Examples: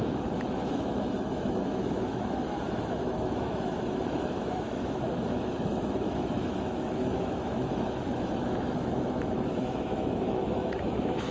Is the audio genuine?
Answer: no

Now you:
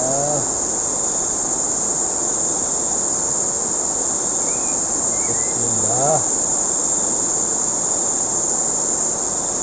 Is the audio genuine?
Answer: yes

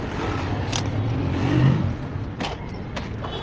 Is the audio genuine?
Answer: yes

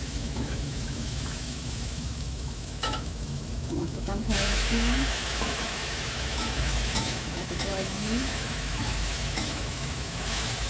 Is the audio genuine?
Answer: no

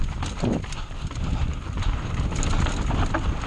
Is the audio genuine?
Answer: yes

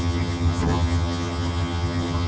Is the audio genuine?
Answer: no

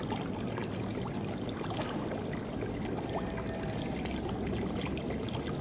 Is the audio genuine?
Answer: yes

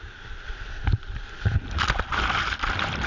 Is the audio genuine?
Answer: yes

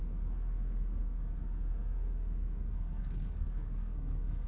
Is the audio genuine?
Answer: no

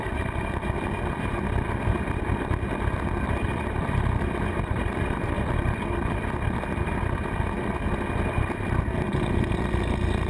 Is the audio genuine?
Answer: yes